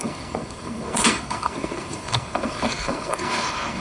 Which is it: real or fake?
fake